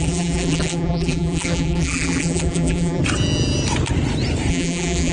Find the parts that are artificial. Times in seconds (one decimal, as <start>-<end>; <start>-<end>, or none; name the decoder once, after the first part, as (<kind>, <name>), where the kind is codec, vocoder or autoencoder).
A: 0.0-3.0 (vocoder, BigVGAN v2); 4.5-5.1